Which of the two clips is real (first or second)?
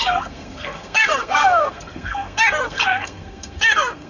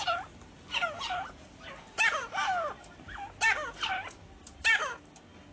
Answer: second